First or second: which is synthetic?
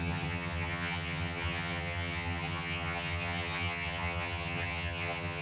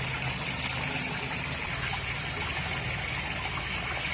first